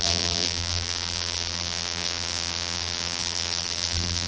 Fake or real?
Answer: fake